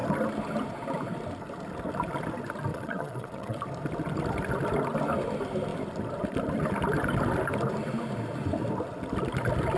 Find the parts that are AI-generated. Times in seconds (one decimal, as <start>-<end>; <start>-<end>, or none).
2.7-3.6